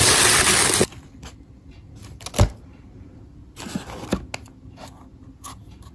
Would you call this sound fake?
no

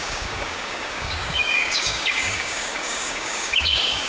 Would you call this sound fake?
yes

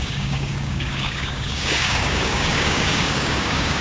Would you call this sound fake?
yes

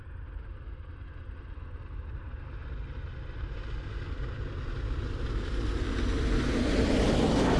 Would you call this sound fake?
no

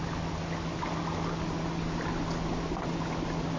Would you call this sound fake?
no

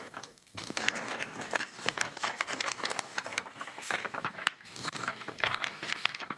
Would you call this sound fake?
yes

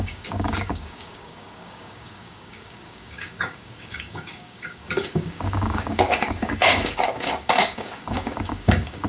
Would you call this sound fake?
yes